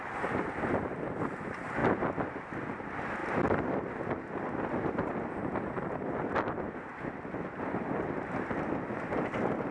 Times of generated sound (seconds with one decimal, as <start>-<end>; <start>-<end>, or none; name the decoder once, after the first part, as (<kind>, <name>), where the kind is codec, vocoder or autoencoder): 0.0-1.8 (vocoder, BigVGAN v2); 2.7-3.2; 7.7-9.7